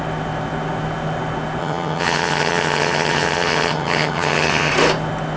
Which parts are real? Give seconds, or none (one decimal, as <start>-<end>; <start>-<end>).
0.0-1.6; 4.7-5.4